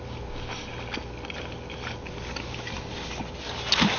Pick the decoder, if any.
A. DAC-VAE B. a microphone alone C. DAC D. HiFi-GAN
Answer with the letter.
B